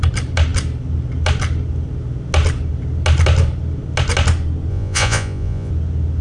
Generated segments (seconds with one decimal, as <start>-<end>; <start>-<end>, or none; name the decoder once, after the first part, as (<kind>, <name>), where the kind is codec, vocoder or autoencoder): 4.7-5.7 (vocoder, Vocos)